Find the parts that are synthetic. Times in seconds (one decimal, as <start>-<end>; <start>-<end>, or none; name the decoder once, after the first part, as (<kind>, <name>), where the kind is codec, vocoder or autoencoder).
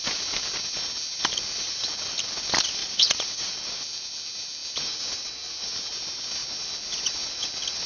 2.8-3.5 (vocoder, Vocos)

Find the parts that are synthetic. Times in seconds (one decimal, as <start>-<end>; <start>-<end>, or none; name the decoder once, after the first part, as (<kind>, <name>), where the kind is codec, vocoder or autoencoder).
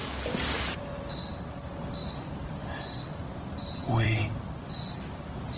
0.0-1.2 (vocoder, BigVGAN v2); 1.8-2.6; 3.4-5.6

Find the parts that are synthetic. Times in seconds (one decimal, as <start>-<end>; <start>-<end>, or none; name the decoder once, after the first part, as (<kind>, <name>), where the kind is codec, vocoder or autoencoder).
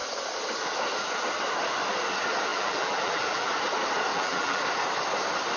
2.5-3.5 (vocoder, BigVGAN v2); 4.1-4.6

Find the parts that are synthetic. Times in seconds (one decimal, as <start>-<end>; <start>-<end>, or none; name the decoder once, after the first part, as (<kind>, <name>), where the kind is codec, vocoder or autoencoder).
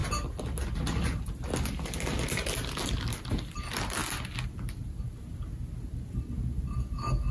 none